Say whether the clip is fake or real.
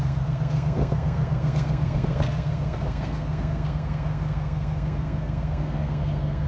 fake